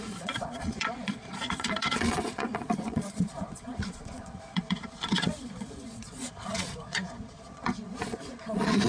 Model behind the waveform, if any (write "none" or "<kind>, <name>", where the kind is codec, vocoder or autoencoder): vocoder, Vocos